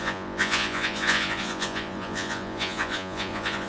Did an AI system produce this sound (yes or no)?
yes